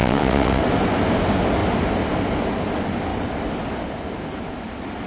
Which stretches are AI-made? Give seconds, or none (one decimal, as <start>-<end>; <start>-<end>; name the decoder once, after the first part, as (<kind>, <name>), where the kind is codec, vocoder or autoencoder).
0.0-0.6 (vocoder, WaveNeXt)